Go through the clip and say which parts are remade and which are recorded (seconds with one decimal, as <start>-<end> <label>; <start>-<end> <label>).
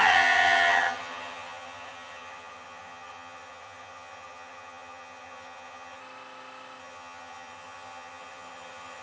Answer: 0.0-6.0 remade; 6.0-6.8 recorded; 6.8-9.0 remade